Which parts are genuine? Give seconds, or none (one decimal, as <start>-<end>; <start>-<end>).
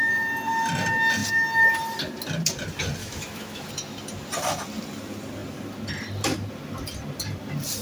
0.0-3.0; 3.7-7.8